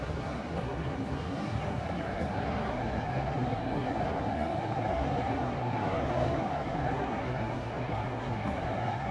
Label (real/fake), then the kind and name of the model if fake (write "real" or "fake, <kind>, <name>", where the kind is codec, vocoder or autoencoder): fake, codec, SNAC